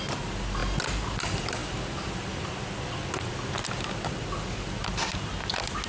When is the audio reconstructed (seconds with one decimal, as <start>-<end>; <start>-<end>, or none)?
none